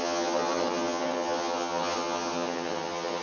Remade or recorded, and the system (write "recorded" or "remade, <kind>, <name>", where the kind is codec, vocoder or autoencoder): remade, vocoder, HiFi-GAN